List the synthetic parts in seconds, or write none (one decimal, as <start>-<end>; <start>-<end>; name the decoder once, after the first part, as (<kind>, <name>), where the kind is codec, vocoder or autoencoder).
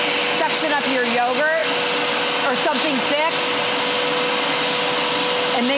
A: none